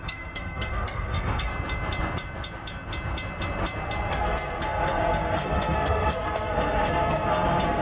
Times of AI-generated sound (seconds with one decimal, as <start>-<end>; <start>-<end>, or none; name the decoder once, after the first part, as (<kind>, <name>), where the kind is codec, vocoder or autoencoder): 0.0-1.5 (codec, SNAC); 4.1-7.8